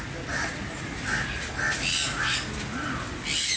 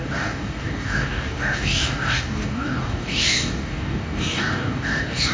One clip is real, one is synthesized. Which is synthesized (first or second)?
second